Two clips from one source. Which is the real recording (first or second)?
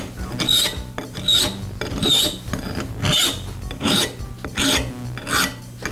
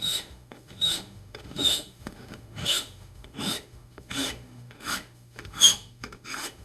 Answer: first